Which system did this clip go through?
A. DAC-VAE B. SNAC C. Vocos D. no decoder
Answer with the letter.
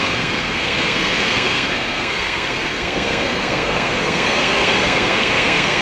B